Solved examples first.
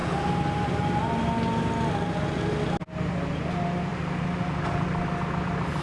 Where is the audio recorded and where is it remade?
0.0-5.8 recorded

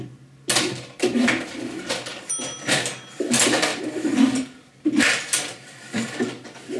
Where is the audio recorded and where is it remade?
0.0-2.1 recorded; 2.1-3.3 remade; 3.3-3.7 recorded; 3.7-6.3 remade; 6.3-6.8 recorded

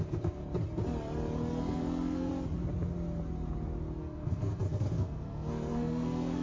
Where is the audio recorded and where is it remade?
0.0-0.4 remade; 0.4-1.5 recorded; 1.5-2.3 remade; 2.3-4.0 recorded; 4.0-6.4 remade

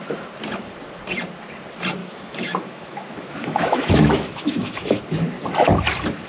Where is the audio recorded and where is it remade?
0.0-2.0 recorded; 2.0-5.0 remade; 5.0-6.3 recorded